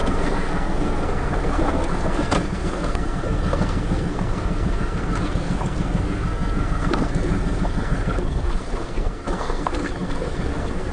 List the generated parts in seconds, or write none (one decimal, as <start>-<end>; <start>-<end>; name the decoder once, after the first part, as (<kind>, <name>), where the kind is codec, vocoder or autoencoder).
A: 0.0-10.9 (codec, SNAC)